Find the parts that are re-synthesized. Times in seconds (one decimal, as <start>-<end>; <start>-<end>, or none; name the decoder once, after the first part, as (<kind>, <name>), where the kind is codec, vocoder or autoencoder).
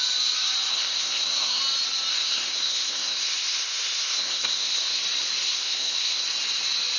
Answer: 0.7-1.6 (codec, SNAC); 2.1-5.0; 5.4-6.2